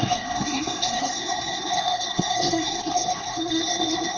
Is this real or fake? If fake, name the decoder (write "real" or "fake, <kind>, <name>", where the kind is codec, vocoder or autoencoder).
fake, codec, SNAC